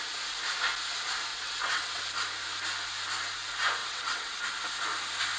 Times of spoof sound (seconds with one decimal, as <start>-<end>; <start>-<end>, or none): 1.3-2.0; 3.8-4.4